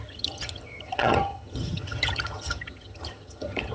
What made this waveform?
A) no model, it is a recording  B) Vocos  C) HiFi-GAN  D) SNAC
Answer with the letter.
C